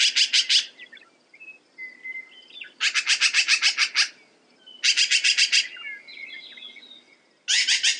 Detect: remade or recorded recorded